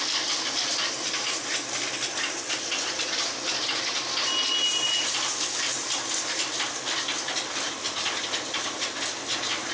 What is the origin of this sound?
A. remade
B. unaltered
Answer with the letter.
B